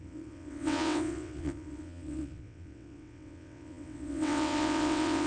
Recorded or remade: remade